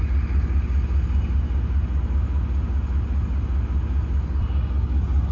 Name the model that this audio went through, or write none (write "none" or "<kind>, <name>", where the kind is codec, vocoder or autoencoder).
none